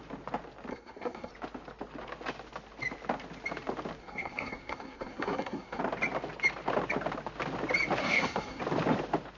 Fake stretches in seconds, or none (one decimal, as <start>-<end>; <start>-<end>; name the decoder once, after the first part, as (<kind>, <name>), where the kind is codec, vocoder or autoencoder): 0.7-1.3 (codec, SNAC); 4.0-5.8; 8.0-8.6